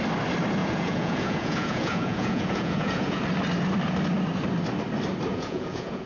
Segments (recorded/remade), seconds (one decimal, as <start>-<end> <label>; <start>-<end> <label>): 0.0-0.6 recorded; 0.6-3.2 remade; 3.2-5.3 recorded; 5.3-6.1 remade